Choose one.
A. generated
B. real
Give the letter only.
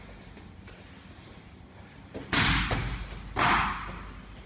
B